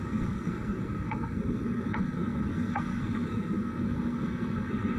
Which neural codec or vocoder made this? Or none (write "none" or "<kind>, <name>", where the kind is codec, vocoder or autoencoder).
codec, SNAC